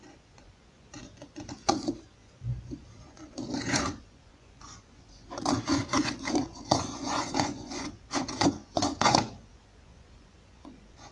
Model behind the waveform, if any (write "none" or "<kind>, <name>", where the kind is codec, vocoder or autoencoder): vocoder, Vocos